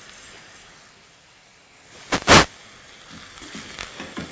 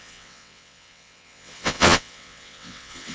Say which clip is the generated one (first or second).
second